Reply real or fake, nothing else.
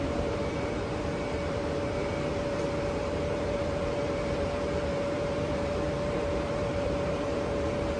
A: fake